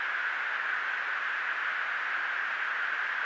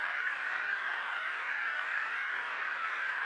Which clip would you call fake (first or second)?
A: second